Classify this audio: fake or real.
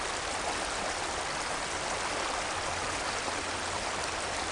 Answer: real